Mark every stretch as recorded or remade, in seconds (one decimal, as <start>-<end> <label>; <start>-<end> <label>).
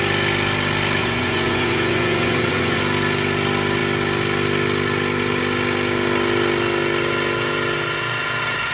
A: 0.0-1.0 recorded; 1.0-2.8 remade; 2.8-8.7 recorded